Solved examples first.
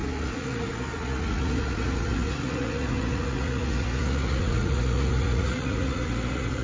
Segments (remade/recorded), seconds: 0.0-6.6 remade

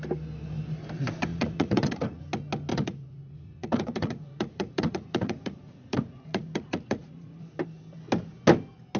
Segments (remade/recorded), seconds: 0.0-1.3 recorded; 1.3-2.2 remade; 2.2-2.7 recorded; 2.7-7.6 remade; 7.6-9.0 recorded

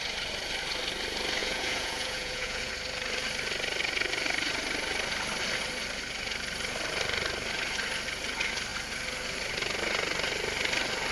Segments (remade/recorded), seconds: 0.0-1.4 recorded; 1.4-2.7 remade; 2.7-11.1 recorded